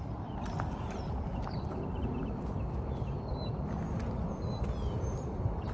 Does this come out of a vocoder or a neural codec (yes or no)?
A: no